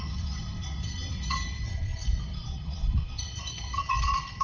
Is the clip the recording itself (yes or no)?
no